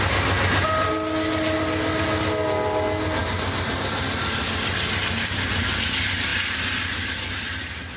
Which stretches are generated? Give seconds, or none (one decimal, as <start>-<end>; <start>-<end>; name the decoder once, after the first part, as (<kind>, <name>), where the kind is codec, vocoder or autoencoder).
none